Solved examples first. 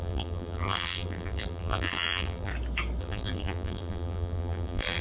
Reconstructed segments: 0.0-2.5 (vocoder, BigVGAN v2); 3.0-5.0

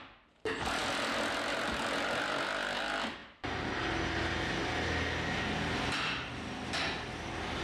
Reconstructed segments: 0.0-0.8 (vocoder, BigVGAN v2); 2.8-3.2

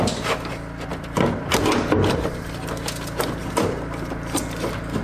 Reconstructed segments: 0.9-1.5 (vocoder, BigVGAN v2); 3.4-4.4